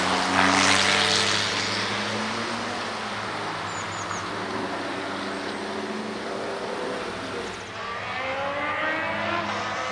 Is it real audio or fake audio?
real